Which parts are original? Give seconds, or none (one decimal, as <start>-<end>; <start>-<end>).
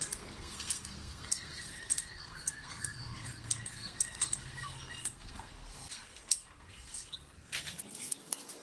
none